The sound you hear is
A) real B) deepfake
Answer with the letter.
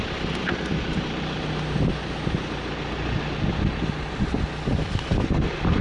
A